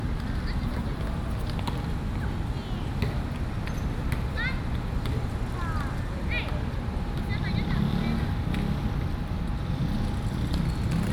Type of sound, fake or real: real